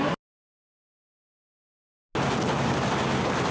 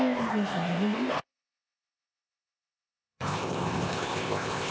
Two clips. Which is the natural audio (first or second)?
first